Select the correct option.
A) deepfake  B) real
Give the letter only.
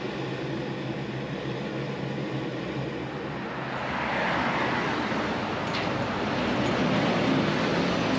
B